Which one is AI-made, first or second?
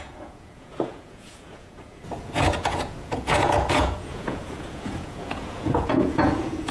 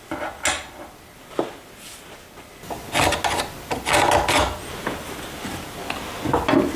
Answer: first